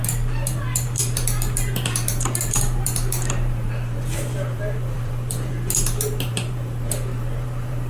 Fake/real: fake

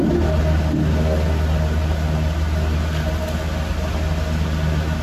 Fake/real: real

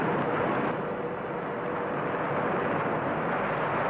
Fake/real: real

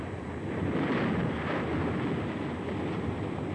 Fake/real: real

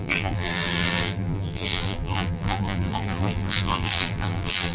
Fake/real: fake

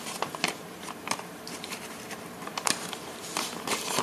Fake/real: fake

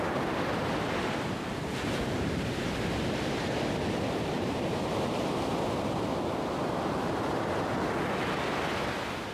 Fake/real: real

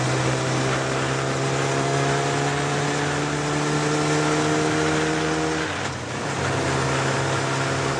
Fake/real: real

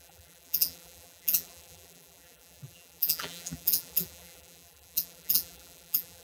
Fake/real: fake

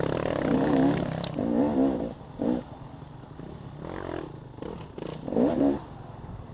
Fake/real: real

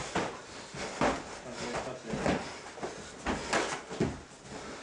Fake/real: real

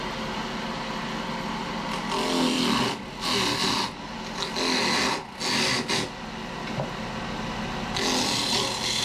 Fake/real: real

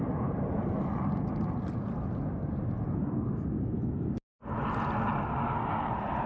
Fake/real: real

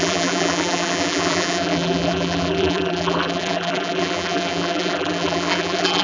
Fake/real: fake